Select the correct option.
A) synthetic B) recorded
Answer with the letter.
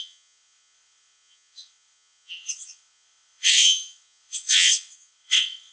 A